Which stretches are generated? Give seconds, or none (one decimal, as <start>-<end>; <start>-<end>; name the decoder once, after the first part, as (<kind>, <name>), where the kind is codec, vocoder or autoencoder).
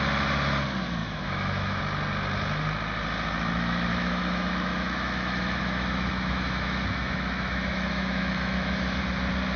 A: 1.0-1.8 (autoencoder, DAC-VAE); 3.9-9.0